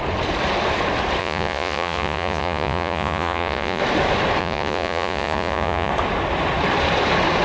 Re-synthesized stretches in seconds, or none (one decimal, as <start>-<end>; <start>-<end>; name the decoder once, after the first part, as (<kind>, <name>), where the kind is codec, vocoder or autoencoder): 1.2-3.8 (vocoder, Vocos); 4.4-5.9